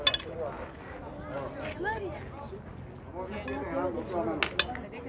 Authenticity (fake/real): real